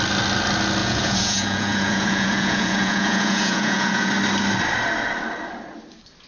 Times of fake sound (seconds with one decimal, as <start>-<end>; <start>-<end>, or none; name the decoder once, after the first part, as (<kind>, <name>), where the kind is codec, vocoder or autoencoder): 0.8-4.1 (vocoder, Vocos)

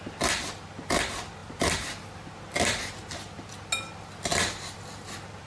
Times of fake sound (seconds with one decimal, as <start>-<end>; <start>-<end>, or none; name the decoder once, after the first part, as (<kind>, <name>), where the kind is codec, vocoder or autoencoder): 1.4-2.3 (vocoder, BigVGAN v2)

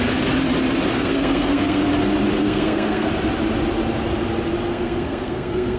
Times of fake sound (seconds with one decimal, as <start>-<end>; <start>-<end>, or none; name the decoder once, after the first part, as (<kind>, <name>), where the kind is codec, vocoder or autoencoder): 0.9-1.9 (codec, SNAC); 2.4-3.1; 4.7-5.8

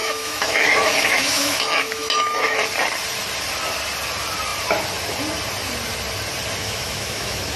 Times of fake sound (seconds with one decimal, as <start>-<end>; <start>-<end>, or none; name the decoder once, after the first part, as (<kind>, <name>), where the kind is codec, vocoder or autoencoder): 0.0-2.6 (autoencoder, DAC-VAE); 6.6-7.6